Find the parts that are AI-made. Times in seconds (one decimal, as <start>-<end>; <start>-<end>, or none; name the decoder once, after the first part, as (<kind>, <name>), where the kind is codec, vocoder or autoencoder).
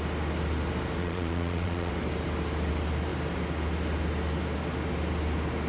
1.0-1.9 (vocoder, Vocos)